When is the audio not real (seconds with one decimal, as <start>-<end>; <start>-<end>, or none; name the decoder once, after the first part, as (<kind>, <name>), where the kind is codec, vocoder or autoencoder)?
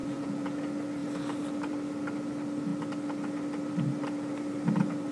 0.0-0.6 (vocoder, Vocos)